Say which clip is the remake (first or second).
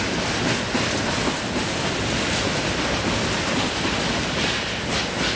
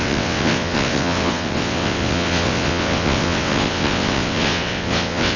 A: second